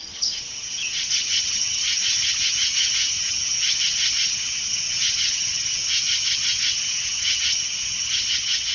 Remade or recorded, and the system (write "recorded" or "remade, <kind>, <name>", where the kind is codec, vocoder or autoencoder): remade, vocoder, HiFi-GAN